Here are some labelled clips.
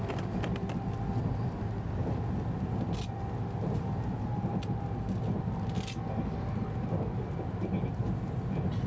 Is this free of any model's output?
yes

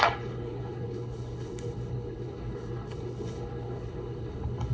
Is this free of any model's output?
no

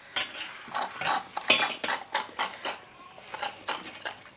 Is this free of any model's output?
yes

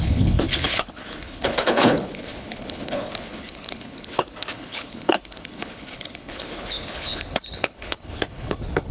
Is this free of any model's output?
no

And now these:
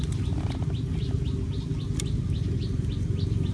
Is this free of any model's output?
yes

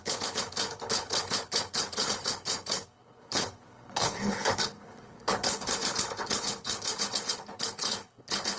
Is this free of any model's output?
no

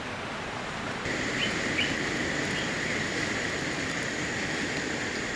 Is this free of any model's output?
yes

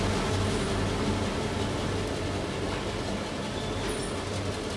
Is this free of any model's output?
yes